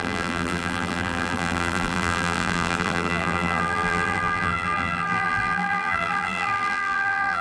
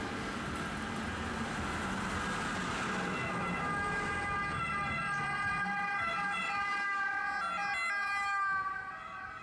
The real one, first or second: second